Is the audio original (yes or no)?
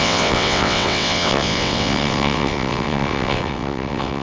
no